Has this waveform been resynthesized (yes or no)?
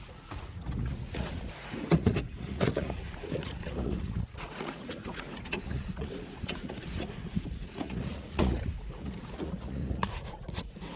yes